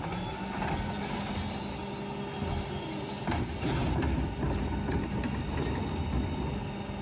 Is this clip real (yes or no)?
yes